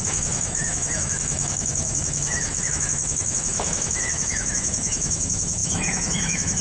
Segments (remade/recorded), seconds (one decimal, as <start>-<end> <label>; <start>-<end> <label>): 0.0-6.6 remade